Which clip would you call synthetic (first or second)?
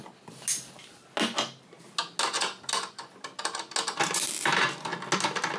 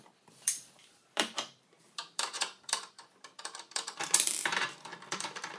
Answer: second